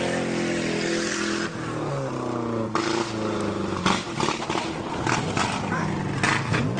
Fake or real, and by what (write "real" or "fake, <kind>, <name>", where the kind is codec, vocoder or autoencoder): real